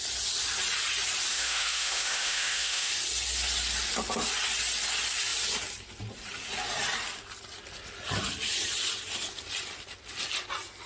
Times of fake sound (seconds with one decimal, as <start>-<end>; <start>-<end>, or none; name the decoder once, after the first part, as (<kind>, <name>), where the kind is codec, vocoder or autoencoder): 1.3-2.9 (autoencoder, DAC-VAE)